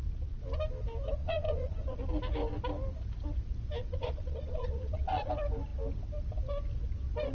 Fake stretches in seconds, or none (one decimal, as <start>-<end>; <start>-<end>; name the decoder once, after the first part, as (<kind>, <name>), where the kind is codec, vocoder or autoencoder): 1.2-2.0 (vocoder, Vocos); 3.8-5.3